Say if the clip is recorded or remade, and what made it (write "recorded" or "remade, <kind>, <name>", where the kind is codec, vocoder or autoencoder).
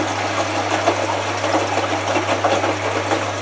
recorded